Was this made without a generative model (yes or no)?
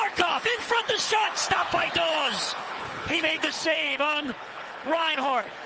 no